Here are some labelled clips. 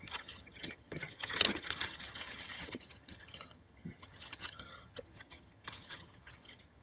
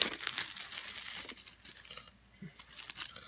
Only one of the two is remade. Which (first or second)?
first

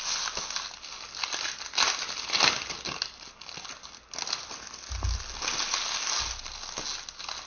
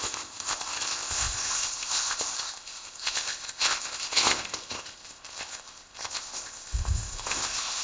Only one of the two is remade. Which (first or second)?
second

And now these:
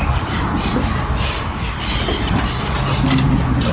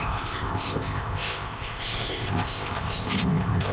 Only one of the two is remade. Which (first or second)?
second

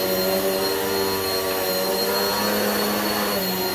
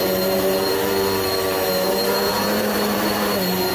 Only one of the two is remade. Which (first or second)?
second